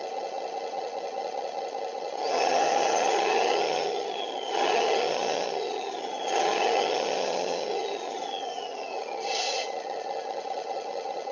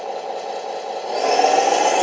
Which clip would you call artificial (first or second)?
first